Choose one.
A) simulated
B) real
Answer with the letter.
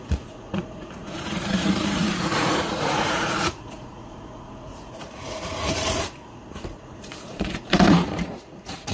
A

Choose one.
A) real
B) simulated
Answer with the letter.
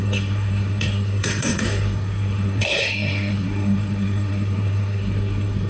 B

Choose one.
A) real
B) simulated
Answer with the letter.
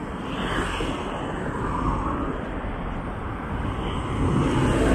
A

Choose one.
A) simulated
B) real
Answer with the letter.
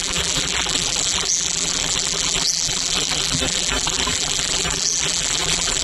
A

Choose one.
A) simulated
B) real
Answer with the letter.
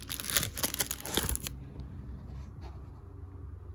B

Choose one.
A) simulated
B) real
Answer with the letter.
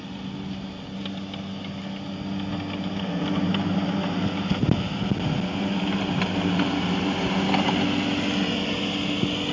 B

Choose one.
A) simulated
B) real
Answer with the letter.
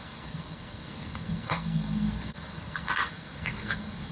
A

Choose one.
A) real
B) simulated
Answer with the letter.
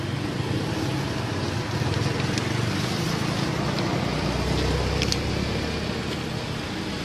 A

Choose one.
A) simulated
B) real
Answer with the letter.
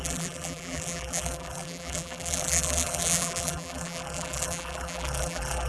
A